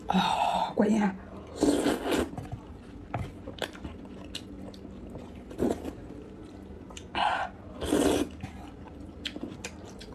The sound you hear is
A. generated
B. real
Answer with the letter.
B